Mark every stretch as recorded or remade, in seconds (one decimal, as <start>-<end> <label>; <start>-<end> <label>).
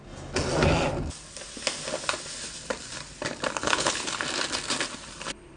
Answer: 0.0-3.6 recorded; 3.6-4.2 remade; 4.2-5.6 recorded